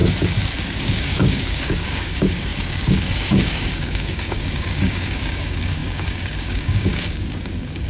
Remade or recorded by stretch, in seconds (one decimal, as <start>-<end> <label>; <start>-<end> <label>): 0.0-0.8 recorded; 0.8-7.9 remade